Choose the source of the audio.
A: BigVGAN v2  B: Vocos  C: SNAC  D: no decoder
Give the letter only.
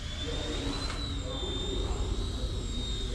D